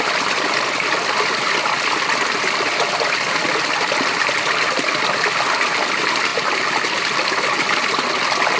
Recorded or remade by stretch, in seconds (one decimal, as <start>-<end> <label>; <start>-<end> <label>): 0.0-8.6 recorded